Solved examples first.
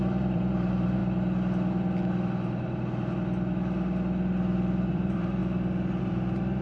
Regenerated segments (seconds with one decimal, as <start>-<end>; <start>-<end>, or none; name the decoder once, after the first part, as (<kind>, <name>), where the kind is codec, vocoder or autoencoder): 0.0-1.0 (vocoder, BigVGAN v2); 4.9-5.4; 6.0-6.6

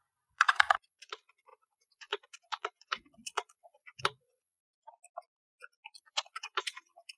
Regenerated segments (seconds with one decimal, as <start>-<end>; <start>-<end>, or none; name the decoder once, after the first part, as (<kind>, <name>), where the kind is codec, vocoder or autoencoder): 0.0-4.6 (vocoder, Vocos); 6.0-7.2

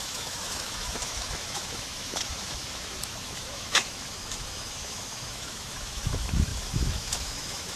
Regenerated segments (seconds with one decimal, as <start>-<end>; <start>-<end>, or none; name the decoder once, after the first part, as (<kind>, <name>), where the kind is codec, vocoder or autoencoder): 0.0-7.8 (autoencoder, DAC-VAE)

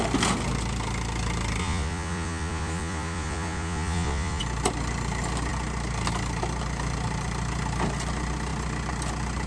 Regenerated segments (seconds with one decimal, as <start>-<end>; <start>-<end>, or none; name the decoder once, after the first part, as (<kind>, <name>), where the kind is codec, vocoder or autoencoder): 1.6-4.4 (vocoder, Vocos)

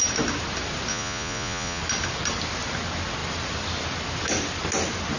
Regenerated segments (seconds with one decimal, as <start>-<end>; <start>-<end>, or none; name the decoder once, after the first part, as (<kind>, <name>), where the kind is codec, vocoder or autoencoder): 0.9-1.8 (vocoder, Vocos)

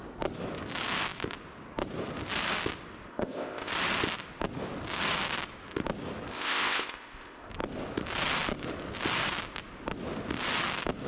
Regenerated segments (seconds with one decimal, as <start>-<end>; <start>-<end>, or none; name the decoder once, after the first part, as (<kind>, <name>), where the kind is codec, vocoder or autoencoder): 3.1-3.7 (codec, ZipCodec); 6.3-7.5